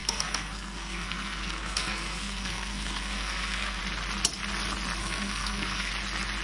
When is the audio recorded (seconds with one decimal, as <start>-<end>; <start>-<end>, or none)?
3.8-5.0; 5.9-6.4